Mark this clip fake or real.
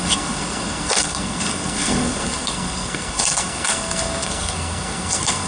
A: fake